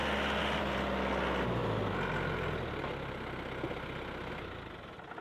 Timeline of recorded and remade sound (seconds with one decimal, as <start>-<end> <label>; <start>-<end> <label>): 0.0-5.2 recorded